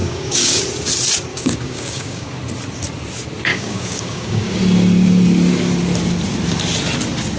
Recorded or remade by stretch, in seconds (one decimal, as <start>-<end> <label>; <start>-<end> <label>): 0.0-0.6 remade; 0.6-1.3 recorded; 1.3-2.4 remade; 2.4-3.5 recorded; 3.5-4.6 remade; 4.6-7.4 recorded